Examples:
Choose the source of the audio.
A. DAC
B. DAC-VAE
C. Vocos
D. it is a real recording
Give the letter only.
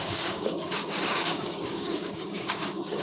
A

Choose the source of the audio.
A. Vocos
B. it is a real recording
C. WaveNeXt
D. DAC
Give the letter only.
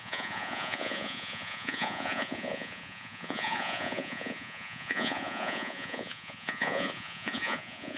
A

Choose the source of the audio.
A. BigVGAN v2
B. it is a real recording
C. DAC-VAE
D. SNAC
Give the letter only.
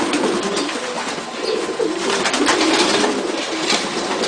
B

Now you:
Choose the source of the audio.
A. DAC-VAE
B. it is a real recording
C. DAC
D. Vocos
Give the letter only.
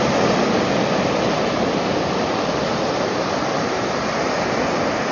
B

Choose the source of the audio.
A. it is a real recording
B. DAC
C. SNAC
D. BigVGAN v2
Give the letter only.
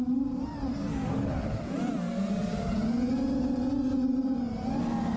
A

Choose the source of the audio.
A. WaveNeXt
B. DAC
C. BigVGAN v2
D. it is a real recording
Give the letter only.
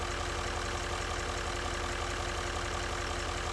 D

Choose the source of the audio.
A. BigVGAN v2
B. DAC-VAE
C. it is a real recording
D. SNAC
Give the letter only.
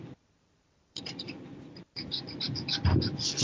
A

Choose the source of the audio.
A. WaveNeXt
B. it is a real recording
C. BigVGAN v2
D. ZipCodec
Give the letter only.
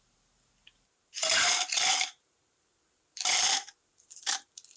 C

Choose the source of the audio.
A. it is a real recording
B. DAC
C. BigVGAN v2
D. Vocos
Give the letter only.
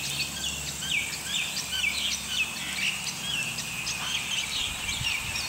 A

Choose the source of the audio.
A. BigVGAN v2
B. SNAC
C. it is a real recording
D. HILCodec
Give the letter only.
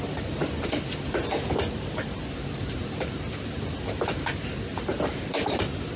A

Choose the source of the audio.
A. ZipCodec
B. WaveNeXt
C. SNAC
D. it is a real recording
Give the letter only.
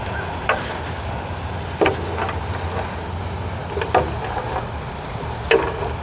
D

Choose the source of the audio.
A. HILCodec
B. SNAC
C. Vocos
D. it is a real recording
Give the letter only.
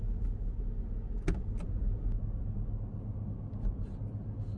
D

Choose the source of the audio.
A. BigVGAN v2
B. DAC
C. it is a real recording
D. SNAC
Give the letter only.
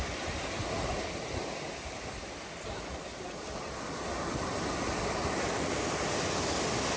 C